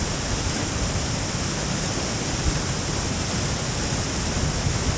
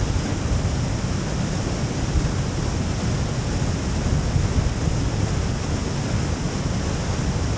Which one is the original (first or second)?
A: second